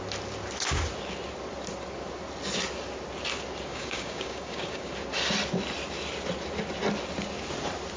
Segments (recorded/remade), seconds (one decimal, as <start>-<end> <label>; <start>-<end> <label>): 0.0-3.7 recorded; 3.7-4.9 remade; 4.9-8.0 recorded